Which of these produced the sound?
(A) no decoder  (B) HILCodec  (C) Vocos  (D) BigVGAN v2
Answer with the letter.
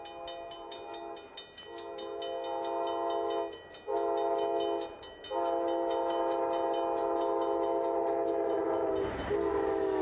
A